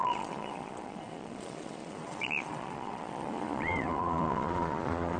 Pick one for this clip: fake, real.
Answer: fake